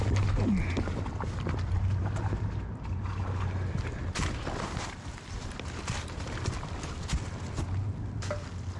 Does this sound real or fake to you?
real